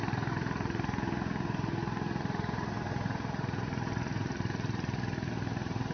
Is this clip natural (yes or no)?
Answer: no